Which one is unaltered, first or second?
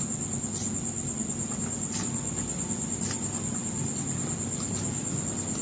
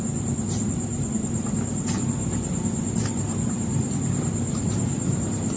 first